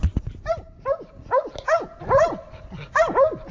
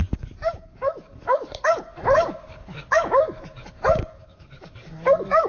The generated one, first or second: second